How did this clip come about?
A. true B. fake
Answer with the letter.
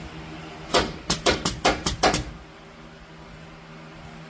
A